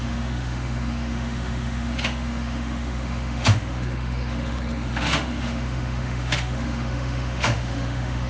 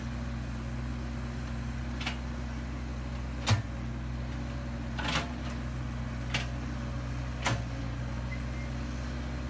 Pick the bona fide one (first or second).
second